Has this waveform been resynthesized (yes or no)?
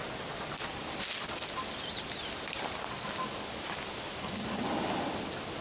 no